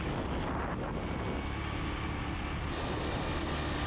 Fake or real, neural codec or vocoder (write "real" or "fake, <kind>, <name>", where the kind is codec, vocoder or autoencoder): real